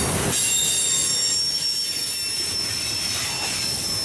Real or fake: real